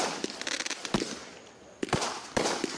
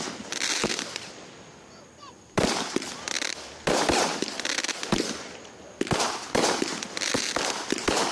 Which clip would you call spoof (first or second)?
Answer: second